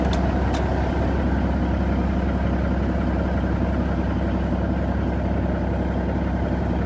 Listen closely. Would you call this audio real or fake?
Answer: real